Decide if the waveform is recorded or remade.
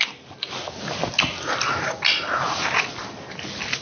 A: recorded